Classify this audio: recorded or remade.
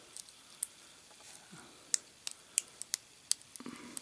recorded